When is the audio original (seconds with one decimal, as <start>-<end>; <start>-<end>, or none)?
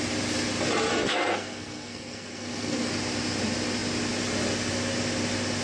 0.0-0.9; 2.9-5.6